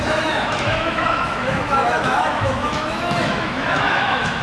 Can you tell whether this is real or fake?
fake